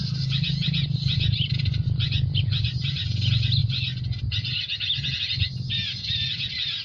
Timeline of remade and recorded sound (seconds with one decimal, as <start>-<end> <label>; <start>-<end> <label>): 0.0-6.8 recorded